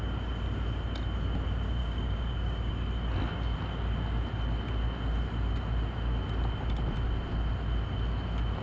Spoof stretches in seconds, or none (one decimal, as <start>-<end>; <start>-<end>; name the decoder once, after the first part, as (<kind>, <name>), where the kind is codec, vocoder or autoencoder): 1.8-2.7 (codec, DAC)